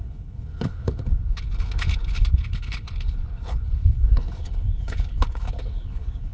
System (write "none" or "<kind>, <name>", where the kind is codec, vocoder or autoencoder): codec, HILCodec